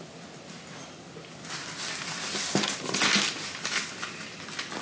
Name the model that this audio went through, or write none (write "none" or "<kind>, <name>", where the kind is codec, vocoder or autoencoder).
none